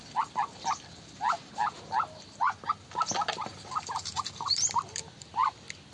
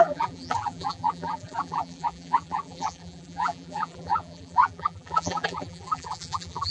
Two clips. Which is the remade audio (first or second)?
second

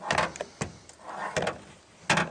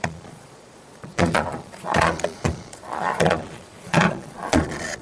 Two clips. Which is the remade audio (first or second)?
second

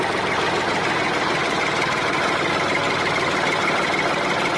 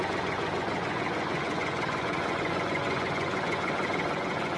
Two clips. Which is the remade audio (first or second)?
second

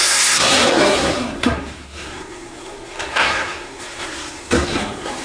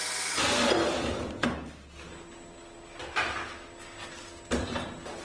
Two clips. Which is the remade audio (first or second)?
first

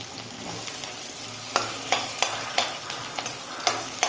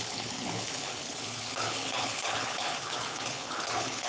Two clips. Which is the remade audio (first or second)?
second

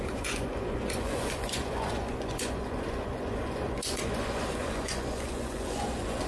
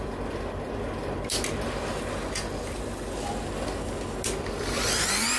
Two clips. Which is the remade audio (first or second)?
first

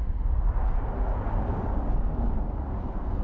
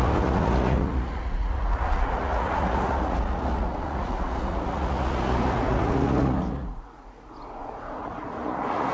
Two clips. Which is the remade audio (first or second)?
second